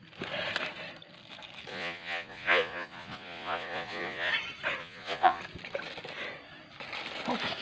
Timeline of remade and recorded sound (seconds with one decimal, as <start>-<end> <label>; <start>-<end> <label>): 0.0-1.7 recorded; 1.7-4.3 remade; 4.3-4.8 recorded; 4.8-5.4 remade; 5.4-7.6 recorded